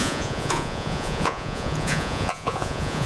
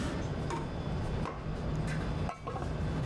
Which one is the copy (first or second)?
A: first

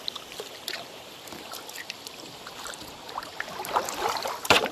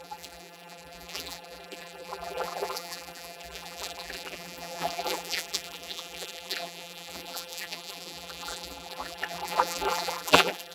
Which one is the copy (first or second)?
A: second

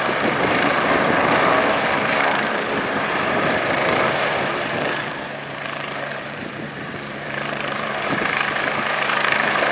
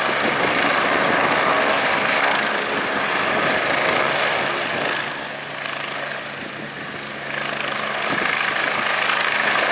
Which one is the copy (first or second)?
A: first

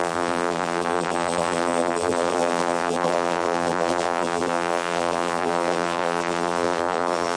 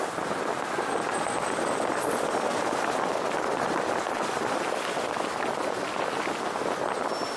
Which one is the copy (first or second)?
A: first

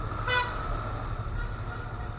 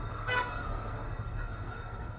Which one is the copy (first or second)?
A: second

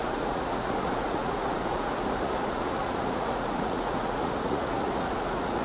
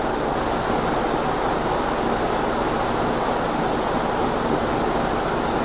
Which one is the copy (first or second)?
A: first